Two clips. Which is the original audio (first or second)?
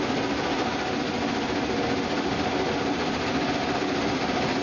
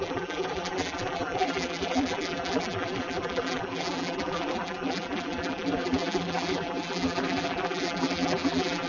first